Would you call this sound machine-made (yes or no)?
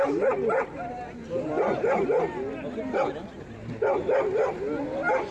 no